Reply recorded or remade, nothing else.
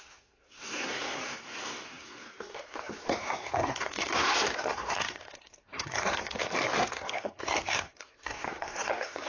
remade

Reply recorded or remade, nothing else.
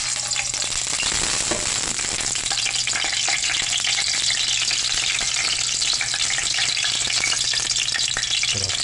recorded